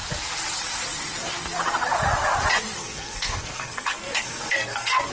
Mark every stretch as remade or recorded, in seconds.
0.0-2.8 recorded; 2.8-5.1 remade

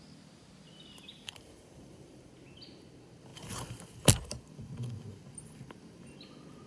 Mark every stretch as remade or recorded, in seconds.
0.0-1.1 recorded; 1.1-2.3 remade; 2.3-6.7 recorded

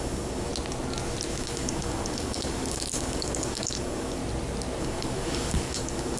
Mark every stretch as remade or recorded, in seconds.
0.0-0.5 remade; 0.5-1.3 recorded; 1.3-4.2 remade; 4.2-4.8 recorded; 4.8-6.2 remade